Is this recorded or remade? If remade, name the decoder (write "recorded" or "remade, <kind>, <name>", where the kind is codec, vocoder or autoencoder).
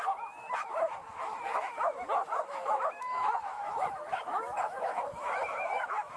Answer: remade, autoencoder, DAC-VAE